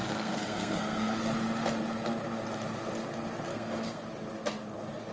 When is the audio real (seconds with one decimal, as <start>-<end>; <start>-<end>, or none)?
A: 1.2-3.5; 4.0-5.1